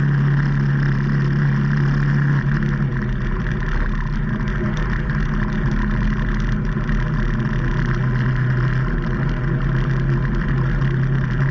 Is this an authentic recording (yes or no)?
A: yes